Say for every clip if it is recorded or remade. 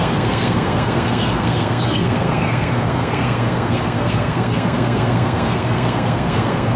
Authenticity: remade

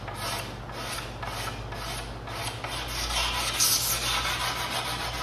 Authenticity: recorded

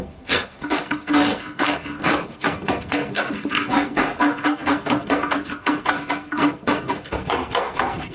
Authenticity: remade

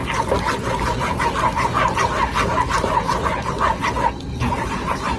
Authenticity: recorded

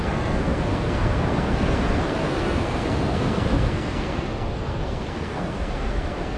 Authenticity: remade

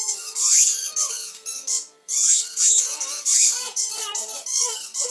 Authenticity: remade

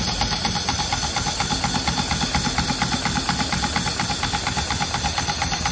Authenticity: recorded